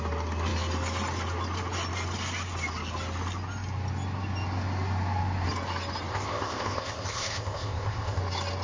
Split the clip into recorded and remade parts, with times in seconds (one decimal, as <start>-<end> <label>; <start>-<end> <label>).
0.0-6.1 recorded; 6.1-8.2 remade; 8.2-8.6 recorded